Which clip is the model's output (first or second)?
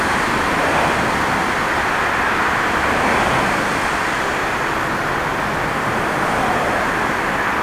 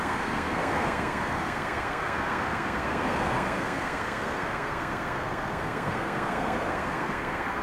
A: second